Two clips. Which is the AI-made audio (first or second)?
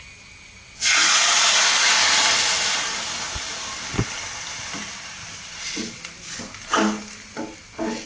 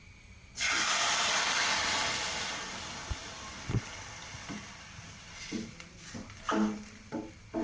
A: second